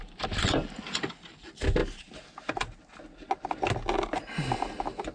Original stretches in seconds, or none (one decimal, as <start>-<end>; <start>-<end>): 0.0-5.1